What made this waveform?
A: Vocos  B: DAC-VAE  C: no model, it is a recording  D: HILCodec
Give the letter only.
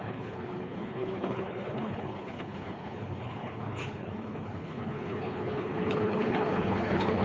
D